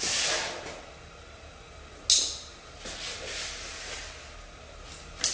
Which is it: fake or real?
real